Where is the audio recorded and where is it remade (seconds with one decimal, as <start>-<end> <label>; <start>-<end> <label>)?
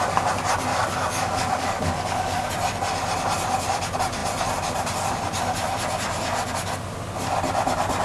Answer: 0.0-0.7 recorded; 0.7-2.5 remade; 2.5-8.0 recorded